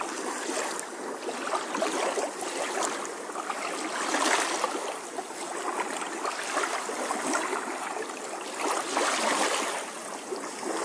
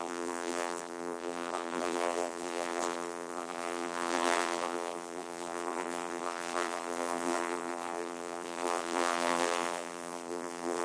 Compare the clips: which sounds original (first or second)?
first